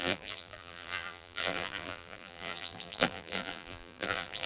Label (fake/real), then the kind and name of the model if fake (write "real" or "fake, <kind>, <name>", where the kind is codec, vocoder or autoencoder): fake, vocoder, BigVGAN v2